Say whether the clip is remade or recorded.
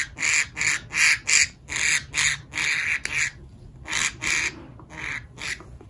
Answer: recorded